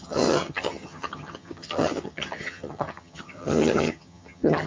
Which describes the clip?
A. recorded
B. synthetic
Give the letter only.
B